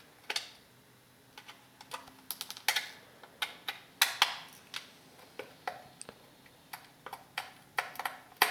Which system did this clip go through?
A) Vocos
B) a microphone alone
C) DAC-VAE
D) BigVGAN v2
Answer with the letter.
B